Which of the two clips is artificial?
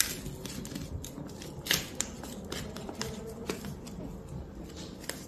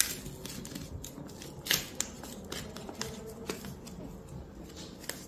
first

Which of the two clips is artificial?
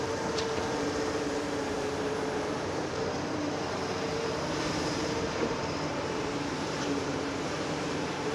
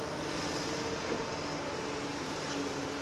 first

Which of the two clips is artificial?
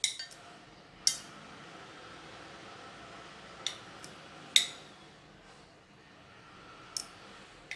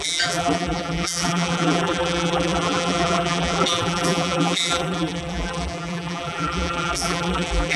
second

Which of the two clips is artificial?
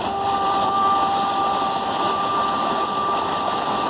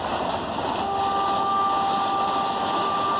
first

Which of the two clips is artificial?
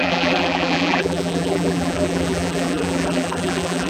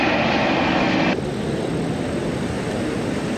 first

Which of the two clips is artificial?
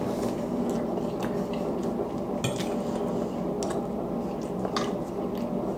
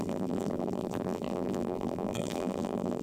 second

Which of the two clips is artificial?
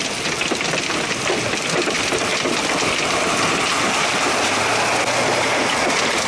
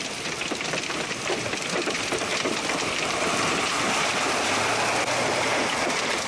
second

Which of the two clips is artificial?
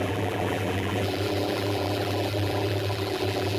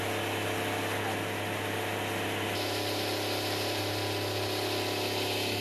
first